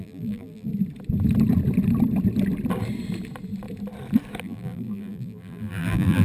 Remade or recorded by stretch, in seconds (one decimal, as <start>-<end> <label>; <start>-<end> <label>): 0.0-0.7 remade; 0.7-4.4 recorded; 4.4-6.2 remade